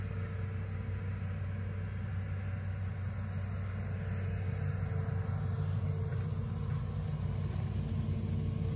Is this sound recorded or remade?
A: recorded